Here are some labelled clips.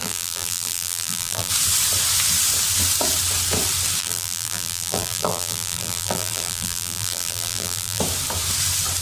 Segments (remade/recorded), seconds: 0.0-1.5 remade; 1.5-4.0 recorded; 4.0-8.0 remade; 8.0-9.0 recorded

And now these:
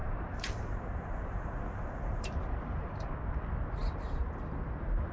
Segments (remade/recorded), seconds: 0.0-3.1 remade; 3.1-5.1 recorded

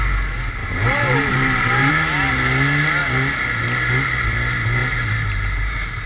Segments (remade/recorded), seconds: 0.0-0.6 recorded; 0.6-1.9 remade; 1.9-4.8 recorded; 4.8-6.1 remade